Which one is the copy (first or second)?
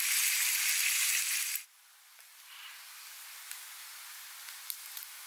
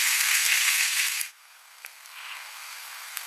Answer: second